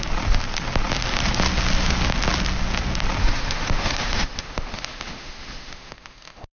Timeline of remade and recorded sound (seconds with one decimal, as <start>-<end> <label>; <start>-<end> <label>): 0.0-3.2 recorded; 3.2-6.5 remade